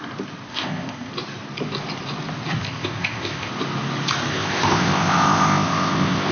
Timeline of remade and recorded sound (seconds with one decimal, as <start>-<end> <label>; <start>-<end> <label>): 0.0-0.5 recorded; 0.5-1.1 remade; 1.1-2.6 recorded; 2.6-3.5 remade; 3.5-4.3 recorded; 4.3-6.3 remade